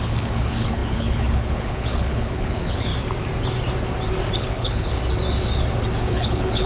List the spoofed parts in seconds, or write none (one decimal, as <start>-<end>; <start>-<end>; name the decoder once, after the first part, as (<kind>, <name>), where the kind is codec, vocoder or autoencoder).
0.0-2.9 (codec, HILCodec); 4.4-4.9; 6.1-6.7